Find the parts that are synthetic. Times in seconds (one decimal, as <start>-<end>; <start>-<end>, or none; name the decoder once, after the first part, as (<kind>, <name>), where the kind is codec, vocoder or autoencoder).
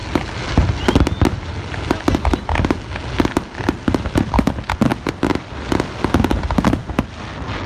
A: none